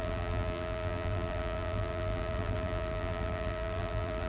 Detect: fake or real fake